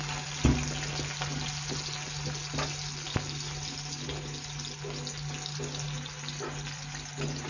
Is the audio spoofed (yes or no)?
no